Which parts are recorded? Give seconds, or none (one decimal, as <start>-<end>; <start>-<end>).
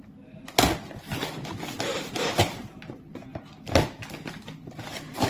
0.0-1.9; 3.2-5.3